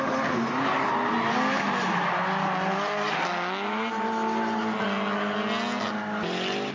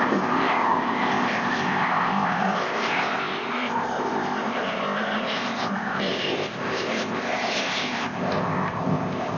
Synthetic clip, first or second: second